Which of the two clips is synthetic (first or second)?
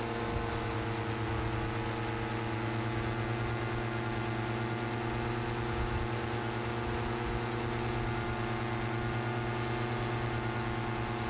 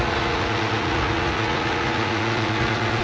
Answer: second